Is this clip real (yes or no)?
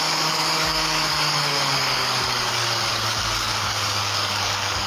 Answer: no